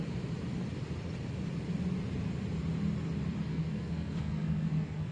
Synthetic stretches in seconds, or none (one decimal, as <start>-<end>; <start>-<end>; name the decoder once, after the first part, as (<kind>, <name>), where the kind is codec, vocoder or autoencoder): 3.5-5.1 (codec, SNAC)